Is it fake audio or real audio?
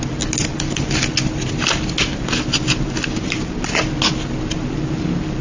real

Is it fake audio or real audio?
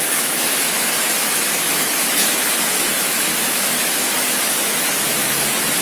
fake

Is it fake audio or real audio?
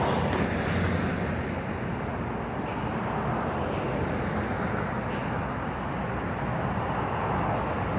real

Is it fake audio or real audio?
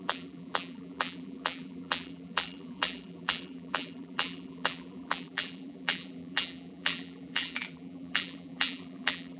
fake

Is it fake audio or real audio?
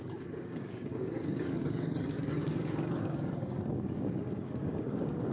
fake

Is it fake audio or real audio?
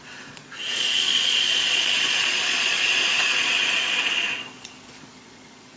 fake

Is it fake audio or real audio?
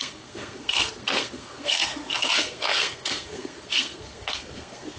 fake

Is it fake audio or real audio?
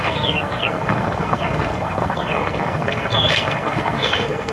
fake